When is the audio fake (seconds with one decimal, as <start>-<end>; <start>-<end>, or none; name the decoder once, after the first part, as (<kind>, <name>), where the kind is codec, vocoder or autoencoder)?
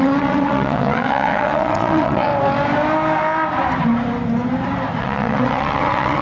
0.0-2.3 (vocoder, WaveNeXt); 5.0-6.2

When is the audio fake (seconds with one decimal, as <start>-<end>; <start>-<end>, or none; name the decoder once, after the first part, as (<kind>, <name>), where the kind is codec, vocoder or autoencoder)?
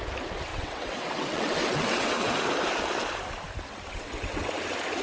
0.5-2.3 (vocoder, WaveNeXt); 3.7-4.5